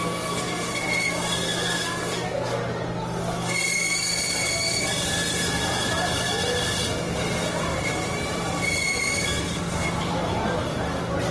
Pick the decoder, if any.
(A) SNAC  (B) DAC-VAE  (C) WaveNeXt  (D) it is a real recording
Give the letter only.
D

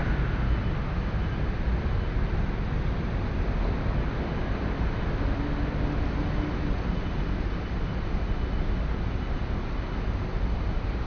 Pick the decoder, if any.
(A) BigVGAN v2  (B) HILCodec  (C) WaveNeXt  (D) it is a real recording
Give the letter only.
D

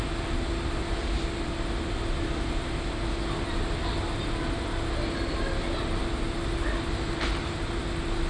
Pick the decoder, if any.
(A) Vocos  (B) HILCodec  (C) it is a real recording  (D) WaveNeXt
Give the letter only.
C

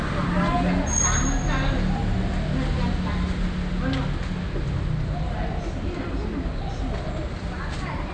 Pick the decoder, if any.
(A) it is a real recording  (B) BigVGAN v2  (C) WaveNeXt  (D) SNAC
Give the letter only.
A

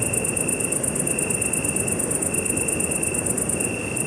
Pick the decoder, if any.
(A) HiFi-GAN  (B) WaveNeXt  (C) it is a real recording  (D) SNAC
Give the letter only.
C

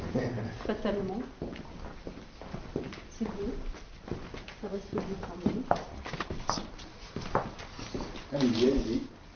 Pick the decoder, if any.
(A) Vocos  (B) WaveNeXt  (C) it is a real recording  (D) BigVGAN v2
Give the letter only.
C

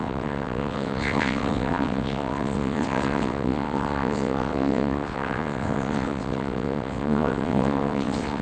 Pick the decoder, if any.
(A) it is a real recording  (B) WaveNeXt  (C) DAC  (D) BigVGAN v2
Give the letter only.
B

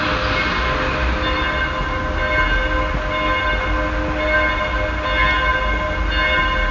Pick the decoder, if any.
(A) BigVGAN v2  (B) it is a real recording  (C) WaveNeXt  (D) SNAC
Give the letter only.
B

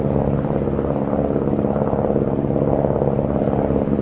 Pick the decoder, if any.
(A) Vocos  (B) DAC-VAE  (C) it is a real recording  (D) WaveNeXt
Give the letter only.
C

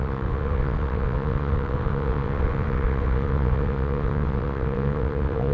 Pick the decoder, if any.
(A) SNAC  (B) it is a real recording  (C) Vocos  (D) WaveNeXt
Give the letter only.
D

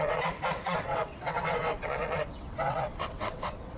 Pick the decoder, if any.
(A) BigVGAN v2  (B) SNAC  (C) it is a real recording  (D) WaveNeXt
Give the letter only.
D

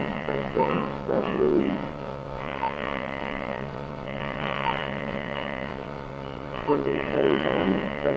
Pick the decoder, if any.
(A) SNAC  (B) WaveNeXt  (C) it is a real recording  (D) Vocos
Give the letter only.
B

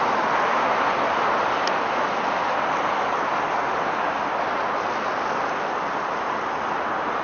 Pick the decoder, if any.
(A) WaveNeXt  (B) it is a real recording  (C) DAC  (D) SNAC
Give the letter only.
B